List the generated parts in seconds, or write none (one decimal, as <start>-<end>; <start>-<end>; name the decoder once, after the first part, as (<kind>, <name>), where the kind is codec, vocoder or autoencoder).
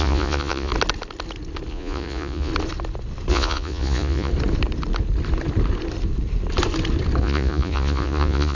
0.0-0.7 (vocoder, Vocos); 1.7-2.5; 3.3-4.3; 7.2-8.5